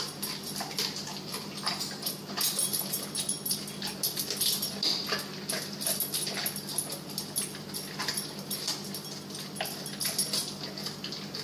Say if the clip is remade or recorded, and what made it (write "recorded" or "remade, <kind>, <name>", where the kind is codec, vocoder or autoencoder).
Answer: recorded